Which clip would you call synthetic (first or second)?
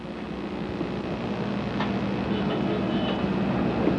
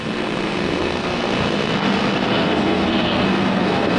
second